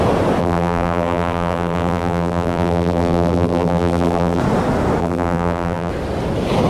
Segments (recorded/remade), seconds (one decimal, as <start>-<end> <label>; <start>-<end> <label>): 0.0-0.4 recorded; 0.4-4.4 remade; 4.4-5.0 recorded; 5.0-5.9 remade; 5.9-6.7 recorded